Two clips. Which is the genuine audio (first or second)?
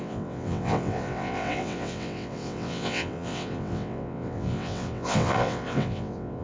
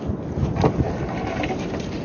second